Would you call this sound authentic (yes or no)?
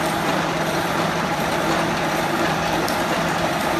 no